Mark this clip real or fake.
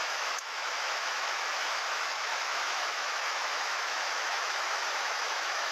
fake